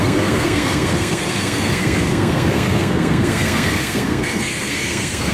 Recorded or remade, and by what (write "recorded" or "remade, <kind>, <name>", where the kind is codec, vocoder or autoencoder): remade, codec, SNAC